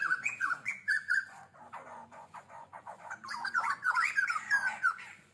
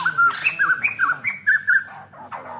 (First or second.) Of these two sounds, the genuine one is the second